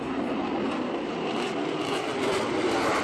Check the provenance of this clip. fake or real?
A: real